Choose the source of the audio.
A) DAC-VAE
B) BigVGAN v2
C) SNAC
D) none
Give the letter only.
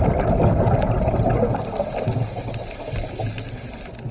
D